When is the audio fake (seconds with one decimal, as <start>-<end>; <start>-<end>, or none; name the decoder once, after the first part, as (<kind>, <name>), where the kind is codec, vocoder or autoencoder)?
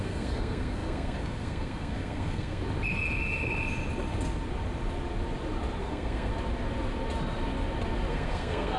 0.0-2.6 (codec, SNAC); 5.8-6.3; 8.1-8.8